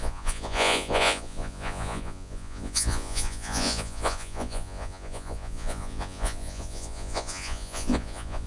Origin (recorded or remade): remade